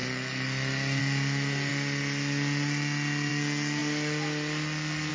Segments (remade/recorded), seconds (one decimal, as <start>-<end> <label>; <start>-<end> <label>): 0.0-5.1 recorded